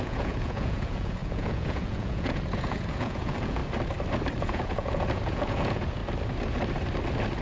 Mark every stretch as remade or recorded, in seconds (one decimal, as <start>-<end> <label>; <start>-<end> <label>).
0.0-3.6 remade; 3.6-4.4 recorded; 4.4-6.0 remade; 6.0-7.4 recorded